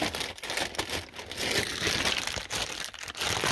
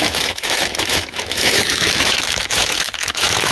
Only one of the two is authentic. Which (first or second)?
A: first